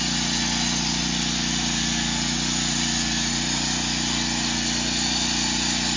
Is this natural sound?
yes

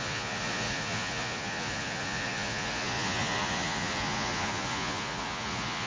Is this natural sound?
no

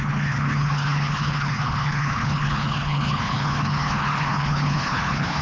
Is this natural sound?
no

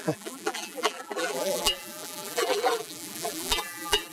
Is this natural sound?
no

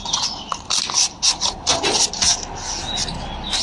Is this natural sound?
yes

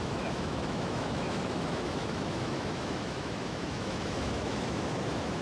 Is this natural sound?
no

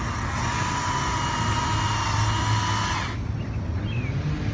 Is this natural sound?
yes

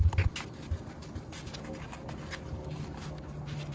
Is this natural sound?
yes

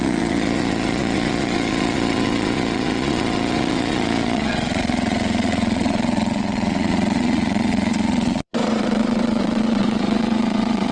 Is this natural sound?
no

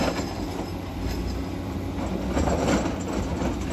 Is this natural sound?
yes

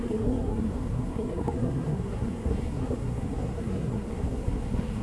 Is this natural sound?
no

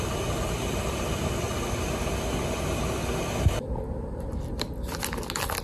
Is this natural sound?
yes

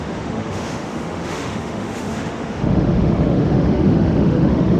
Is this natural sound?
no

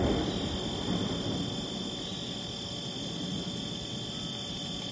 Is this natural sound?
yes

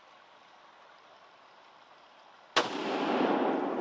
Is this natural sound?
yes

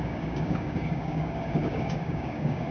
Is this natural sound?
no